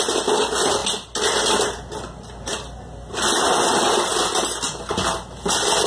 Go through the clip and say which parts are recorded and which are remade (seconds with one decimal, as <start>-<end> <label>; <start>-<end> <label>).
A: 0.0-5.9 recorded

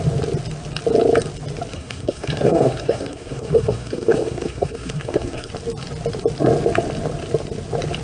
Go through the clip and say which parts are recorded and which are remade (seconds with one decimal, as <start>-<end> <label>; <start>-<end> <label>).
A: 0.0-1.7 recorded; 1.7-5.5 remade; 5.5-8.0 recorded

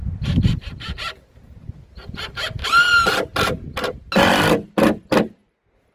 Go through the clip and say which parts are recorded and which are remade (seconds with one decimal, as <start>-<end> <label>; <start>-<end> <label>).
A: 0.0-0.5 remade; 0.5-5.9 recorded